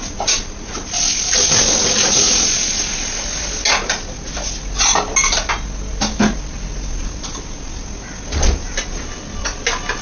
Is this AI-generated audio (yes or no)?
no